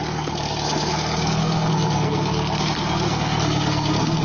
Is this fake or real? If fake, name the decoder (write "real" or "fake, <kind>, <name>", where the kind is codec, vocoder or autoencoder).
fake, codec, SNAC